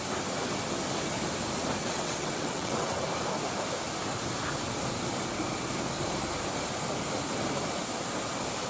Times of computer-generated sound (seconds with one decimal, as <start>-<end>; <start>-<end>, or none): 1.8-3.0